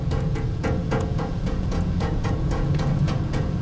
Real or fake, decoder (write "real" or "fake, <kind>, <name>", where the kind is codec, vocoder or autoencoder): fake, vocoder, Vocos